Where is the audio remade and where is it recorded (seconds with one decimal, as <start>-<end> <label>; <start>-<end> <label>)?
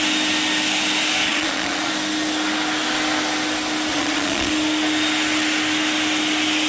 0.0-1.3 recorded; 1.3-1.9 remade; 1.9-3.9 recorded; 3.9-4.5 remade; 4.5-6.7 recorded